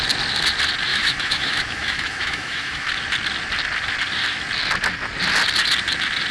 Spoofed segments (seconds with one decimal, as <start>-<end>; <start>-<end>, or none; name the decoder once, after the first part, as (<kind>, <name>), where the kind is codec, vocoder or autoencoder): 0.9-2.9 (autoencoder, DAC-VAE)